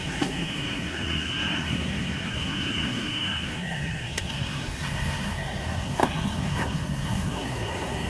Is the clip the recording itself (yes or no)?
no